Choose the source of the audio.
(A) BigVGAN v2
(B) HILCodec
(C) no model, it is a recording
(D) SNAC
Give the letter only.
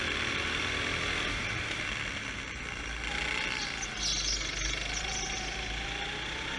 C